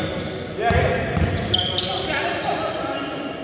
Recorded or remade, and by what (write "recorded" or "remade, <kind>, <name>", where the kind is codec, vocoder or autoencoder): recorded